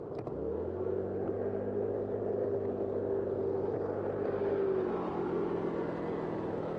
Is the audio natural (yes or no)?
yes